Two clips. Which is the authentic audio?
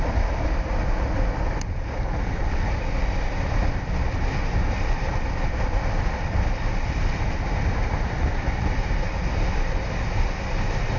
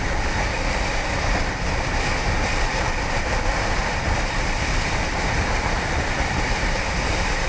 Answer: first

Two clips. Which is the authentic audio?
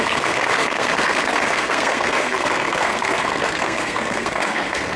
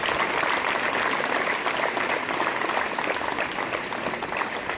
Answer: second